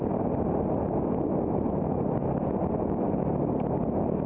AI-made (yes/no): no